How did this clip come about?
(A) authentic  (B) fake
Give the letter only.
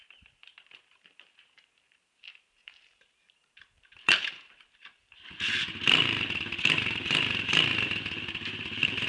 B